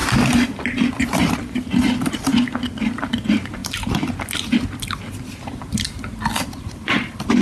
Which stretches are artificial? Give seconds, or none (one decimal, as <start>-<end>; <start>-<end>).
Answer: 1.0-2.3; 3.0-3.6; 6.6-7.4